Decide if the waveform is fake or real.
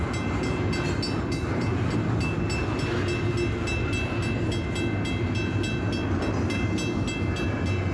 real